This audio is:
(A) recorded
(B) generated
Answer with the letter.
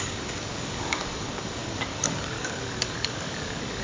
B